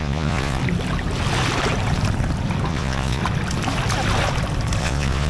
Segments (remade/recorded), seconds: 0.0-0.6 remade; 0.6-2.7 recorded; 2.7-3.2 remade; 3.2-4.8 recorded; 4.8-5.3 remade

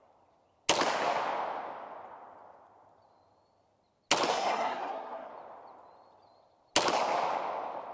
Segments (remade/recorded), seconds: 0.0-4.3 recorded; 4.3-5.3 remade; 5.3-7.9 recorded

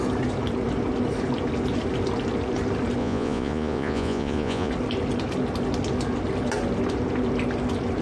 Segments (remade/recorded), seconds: 0.0-3.0 recorded; 3.0-4.7 remade; 4.7-8.0 recorded

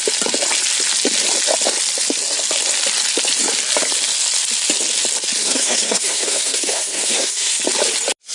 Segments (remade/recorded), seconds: 0.0-5.4 recorded; 5.4-7.6 remade; 7.6-8.3 recorded